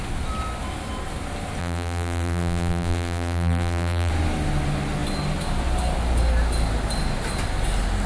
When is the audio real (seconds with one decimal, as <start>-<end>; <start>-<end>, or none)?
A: 0.0-1.6; 4.1-8.1